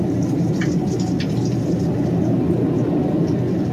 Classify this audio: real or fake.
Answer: real